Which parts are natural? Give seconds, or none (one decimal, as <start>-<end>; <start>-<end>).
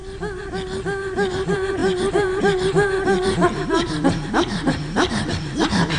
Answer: 0.0-1.3